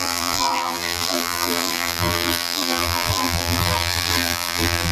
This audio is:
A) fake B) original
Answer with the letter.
A